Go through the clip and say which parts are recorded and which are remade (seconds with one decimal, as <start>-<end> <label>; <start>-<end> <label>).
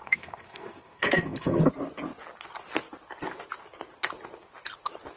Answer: 0.0-1.7 remade; 1.7-5.2 recorded